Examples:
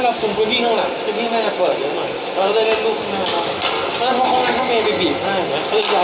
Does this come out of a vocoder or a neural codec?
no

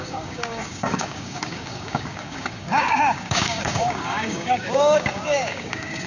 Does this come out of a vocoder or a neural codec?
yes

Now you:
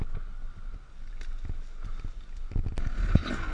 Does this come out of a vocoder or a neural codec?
no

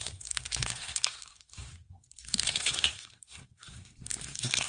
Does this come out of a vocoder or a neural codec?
yes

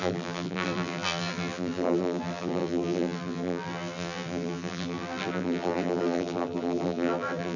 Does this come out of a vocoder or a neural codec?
yes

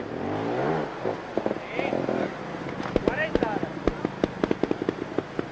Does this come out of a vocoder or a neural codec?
no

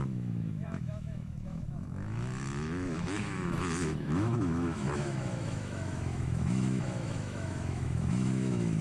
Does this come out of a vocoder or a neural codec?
yes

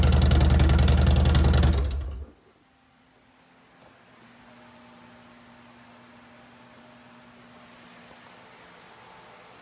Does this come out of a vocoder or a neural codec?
no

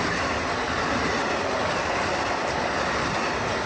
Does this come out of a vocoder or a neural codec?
no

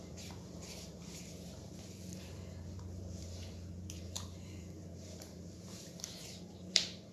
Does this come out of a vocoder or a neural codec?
yes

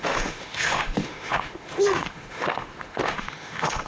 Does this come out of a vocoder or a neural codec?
yes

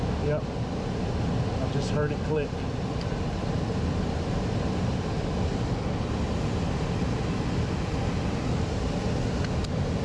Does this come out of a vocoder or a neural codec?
no